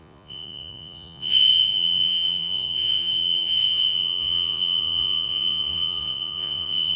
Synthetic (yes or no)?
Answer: yes